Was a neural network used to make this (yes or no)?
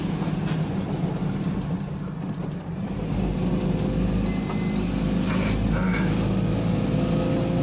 no